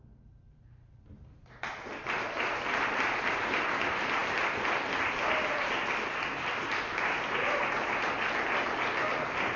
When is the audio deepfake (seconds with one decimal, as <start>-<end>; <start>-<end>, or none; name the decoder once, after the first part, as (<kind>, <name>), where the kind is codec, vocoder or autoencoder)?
none